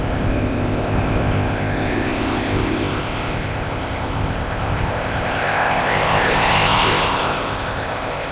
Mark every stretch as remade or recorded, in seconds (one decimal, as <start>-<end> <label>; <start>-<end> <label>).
0.0-8.3 remade